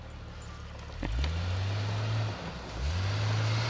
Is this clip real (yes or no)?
yes